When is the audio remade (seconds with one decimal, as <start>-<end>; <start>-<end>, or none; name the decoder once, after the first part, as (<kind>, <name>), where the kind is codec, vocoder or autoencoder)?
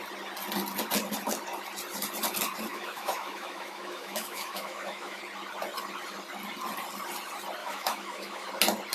2.7-5.2 (autoencoder, DAC-VAE); 7.6-8.5